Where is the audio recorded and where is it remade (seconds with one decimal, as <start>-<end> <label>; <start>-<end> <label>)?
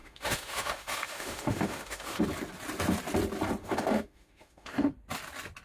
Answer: 0.0-2.2 remade; 2.2-3.6 recorded; 3.6-4.9 remade; 4.9-5.6 recorded